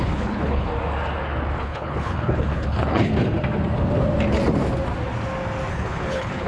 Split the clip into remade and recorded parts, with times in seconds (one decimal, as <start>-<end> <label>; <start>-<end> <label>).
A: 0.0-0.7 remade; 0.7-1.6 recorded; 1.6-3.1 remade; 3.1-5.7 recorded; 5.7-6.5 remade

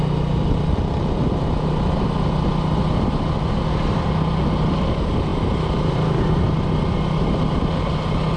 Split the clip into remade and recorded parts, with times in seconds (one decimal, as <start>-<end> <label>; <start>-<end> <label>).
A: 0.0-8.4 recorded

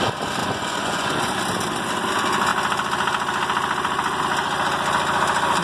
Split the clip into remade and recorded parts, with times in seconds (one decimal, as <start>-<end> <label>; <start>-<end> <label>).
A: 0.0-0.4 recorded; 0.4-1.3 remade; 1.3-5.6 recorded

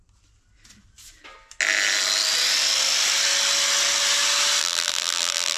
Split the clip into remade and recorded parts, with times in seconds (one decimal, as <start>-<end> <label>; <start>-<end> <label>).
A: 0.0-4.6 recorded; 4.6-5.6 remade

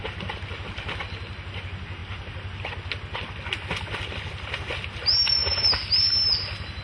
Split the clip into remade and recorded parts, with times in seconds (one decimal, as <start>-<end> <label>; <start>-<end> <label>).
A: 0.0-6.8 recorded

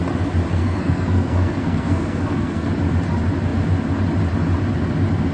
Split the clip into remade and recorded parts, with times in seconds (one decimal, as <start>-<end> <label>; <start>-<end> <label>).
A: 0.0-0.5 recorded; 0.5-2.7 remade; 2.7-5.3 recorded